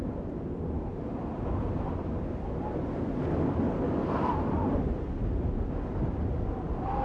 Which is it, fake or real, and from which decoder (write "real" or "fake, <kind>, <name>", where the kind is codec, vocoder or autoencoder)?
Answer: real